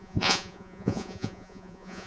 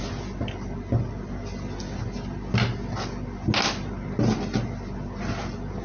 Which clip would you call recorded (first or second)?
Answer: second